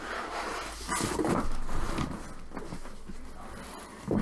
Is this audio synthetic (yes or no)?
no